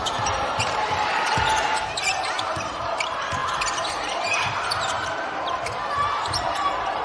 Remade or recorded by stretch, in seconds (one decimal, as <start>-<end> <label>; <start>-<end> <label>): 0.0-7.0 remade